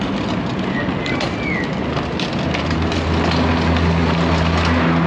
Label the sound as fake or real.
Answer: real